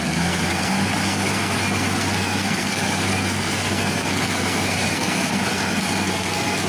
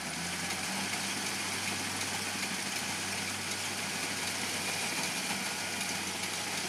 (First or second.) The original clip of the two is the second